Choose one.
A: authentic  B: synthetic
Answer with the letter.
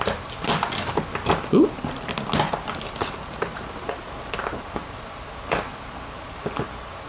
A